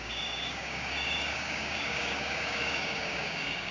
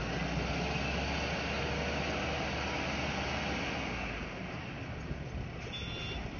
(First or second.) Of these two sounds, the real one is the second